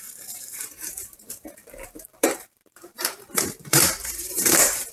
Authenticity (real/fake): fake